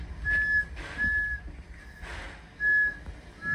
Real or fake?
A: real